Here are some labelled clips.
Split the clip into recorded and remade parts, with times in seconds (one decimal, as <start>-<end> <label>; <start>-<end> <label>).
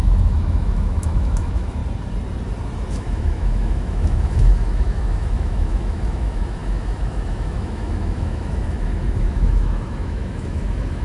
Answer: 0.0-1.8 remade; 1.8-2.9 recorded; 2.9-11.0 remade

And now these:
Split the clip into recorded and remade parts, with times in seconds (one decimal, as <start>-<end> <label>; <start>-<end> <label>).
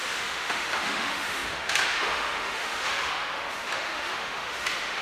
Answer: 0.0-5.0 remade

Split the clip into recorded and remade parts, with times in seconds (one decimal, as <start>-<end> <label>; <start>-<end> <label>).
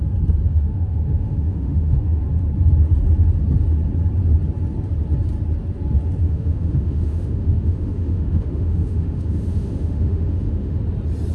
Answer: 0.0-0.5 recorded; 0.5-2.2 remade; 2.2-6.2 recorded; 6.2-10.8 remade; 10.8-11.3 recorded